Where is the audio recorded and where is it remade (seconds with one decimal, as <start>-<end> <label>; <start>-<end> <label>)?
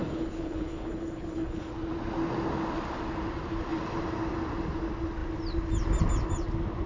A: 0.0-1.7 remade; 1.7-6.9 recorded